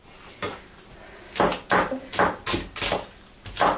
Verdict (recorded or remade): recorded